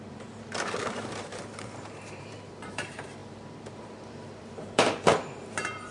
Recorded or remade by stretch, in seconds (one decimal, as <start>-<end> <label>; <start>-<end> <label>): 0.0-5.9 remade